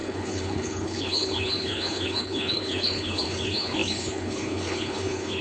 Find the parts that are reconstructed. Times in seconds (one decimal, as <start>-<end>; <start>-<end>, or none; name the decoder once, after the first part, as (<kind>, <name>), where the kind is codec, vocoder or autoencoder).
0.0-5.4 (codec, HILCodec)